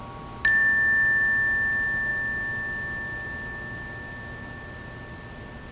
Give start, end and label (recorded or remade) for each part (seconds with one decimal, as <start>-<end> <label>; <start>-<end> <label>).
0.0-5.7 recorded

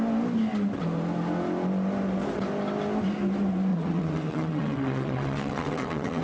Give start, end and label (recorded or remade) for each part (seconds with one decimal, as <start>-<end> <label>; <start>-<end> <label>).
0.0-3.7 recorded; 3.7-6.2 remade

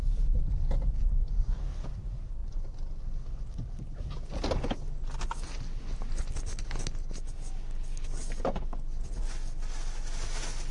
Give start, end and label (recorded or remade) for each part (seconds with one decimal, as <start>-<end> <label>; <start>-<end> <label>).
0.0-10.7 recorded

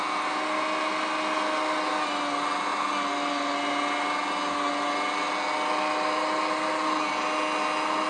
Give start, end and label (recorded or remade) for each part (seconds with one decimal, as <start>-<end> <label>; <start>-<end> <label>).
0.0-8.1 recorded